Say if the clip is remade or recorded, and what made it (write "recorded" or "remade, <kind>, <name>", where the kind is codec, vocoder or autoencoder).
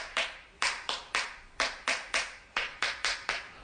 remade, vocoder, BigVGAN v2